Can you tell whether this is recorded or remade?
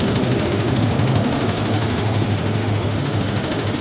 remade